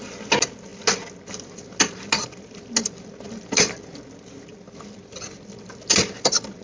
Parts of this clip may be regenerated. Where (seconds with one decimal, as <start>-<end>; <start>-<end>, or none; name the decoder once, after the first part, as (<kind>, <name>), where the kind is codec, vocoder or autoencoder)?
none